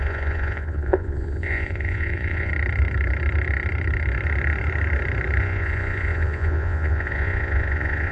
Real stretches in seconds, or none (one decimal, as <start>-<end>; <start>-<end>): 2.5-5.4